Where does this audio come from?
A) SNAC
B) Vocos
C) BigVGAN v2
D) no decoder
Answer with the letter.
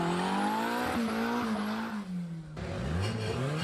D